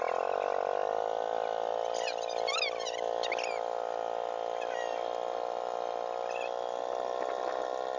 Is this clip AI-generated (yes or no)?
no